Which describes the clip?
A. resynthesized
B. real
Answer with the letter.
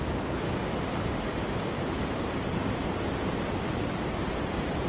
B